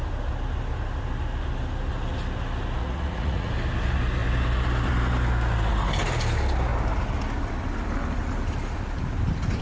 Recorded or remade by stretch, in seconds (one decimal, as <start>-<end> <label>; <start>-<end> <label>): 0.0-2.8 recorded; 2.8-3.5 remade; 3.5-9.6 recorded